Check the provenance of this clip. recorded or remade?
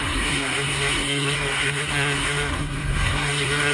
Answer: remade